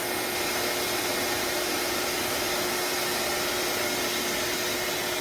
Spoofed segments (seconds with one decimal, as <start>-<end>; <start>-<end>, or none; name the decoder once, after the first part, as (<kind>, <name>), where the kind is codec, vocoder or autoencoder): none